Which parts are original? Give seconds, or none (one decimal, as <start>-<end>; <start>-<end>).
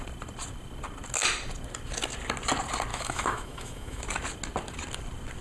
0.0-2.9; 4.0-5.4